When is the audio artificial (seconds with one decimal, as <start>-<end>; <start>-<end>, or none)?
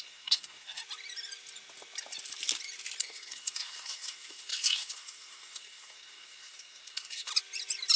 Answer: 0.0-0.8; 3.0-7.3